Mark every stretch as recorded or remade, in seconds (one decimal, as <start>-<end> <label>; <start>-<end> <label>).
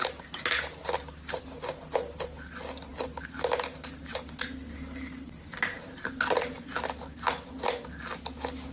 0.0-8.7 recorded